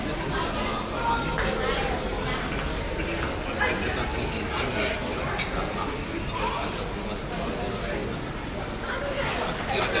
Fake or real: real